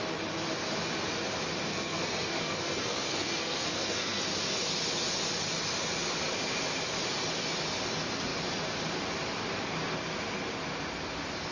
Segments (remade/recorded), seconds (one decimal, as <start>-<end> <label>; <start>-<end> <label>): 0.0-1.7 recorded; 1.7-4.2 remade; 4.2-11.5 recorded